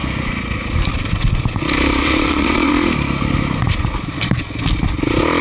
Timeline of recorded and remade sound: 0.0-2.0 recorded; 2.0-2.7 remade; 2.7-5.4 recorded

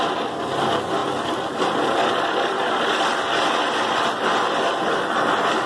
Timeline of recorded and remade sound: 0.0-5.7 recorded

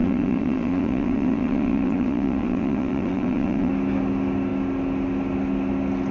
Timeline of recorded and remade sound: 0.0-3.7 remade; 3.7-6.1 recorded

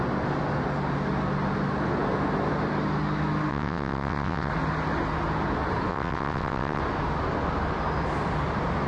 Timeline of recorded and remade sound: 0.0-3.5 recorded; 3.5-4.5 remade; 4.5-5.9 recorded; 5.9-6.8 remade; 6.8-8.9 recorded

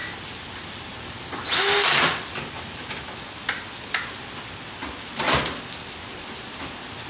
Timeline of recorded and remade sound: 0.0-7.1 recorded

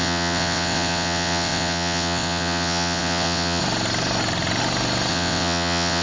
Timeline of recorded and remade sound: 0.0-3.6 remade; 3.6-5.1 recorded; 5.1-6.0 remade